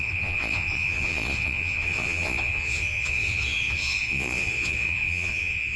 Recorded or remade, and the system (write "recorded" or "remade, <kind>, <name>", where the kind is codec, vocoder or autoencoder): remade, vocoder, Vocos